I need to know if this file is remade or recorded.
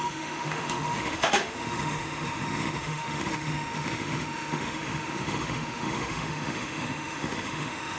remade